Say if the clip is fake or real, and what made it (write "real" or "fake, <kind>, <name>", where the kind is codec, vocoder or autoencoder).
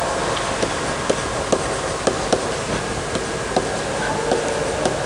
real